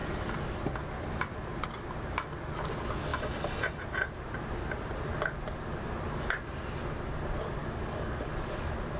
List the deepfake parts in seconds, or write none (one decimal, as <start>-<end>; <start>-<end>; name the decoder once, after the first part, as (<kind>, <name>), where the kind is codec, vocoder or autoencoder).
0.0-0.8 (codec, DAC); 7.6-8.6